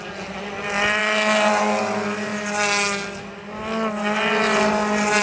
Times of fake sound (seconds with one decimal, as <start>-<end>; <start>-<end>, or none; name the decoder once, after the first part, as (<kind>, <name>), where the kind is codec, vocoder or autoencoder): none